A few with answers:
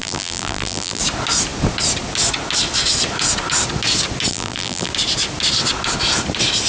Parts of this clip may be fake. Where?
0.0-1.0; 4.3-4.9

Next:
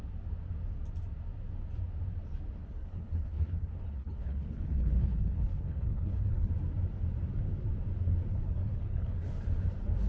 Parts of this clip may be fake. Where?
2.6-6.5; 8.3-9.4

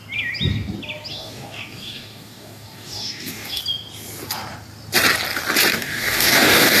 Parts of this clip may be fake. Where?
1.1-3.6; 5.7-6.8

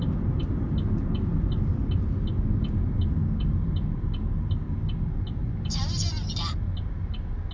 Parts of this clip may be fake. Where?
none

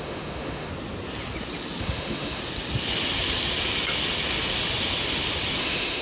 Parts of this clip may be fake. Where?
0.0-0.7; 1.8-2.4; 5.6-6.0

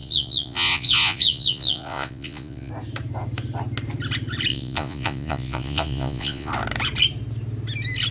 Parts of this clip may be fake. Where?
0.0-2.7; 4.5-6.5